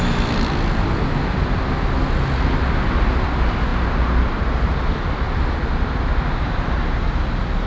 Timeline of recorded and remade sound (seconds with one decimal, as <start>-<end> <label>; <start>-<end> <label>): 0.0-7.7 recorded